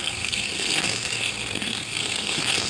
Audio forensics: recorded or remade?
remade